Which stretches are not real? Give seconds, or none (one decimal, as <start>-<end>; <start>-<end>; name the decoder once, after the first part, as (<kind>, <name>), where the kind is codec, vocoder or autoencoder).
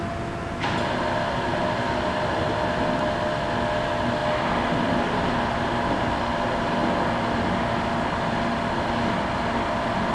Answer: none